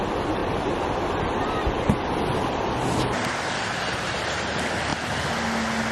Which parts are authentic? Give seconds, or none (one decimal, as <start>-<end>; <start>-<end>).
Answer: 0.0-5.9